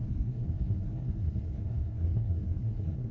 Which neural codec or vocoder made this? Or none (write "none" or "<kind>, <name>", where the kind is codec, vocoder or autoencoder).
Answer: codec, SNAC